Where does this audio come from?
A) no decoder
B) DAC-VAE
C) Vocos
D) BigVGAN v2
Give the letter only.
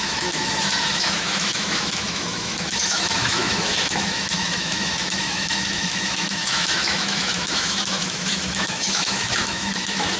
B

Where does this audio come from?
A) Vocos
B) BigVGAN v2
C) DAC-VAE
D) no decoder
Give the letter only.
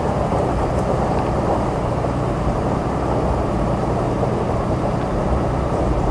B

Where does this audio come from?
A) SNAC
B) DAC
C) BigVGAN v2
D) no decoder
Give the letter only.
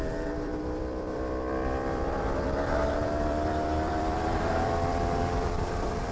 C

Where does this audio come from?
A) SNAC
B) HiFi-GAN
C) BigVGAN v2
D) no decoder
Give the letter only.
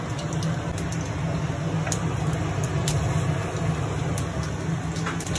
D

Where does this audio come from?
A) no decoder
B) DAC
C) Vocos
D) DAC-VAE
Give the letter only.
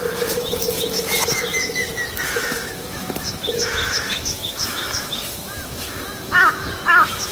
D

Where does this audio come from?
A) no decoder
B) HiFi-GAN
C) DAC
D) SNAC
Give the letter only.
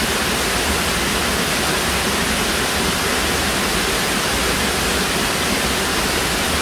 A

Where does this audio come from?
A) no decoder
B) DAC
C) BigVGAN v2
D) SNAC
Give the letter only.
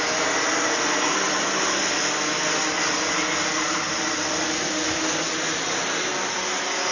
A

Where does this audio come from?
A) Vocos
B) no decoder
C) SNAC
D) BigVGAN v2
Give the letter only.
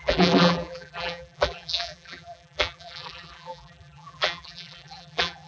D